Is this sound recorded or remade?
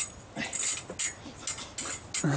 recorded